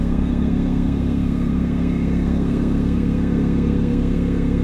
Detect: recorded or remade remade